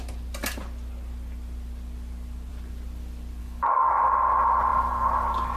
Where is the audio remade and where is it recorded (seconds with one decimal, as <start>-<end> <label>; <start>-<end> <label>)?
0.0-3.4 recorded; 3.4-4.1 remade; 4.1-5.6 recorded